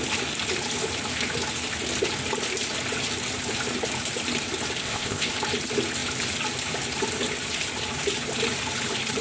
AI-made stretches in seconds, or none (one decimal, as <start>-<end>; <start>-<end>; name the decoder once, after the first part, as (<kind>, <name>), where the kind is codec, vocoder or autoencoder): 4.8-5.3 (codec, ZipCodec)